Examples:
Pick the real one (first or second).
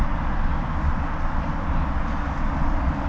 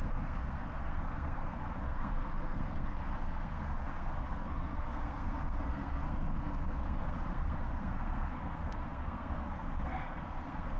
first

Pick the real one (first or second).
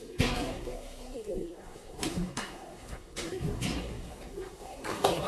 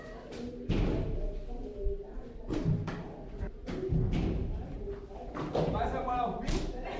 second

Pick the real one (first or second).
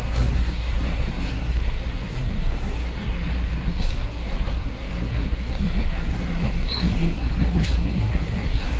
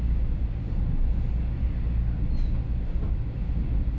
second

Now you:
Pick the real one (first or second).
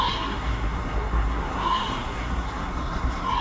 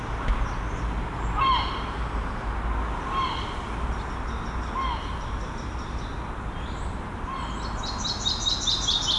second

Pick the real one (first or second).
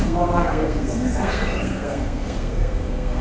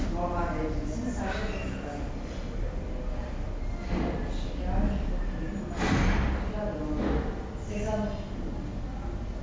second